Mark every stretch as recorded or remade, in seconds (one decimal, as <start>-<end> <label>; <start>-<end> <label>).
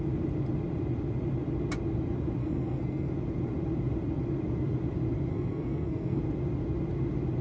0.0-2.4 recorded; 2.4-3.1 remade; 3.1-5.3 recorded; 5.3-6.2 remade; 6.2-7.4 recorded